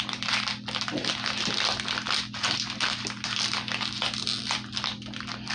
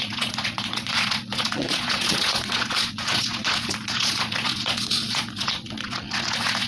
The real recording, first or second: first